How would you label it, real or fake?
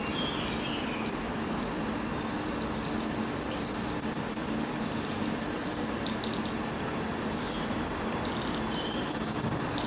real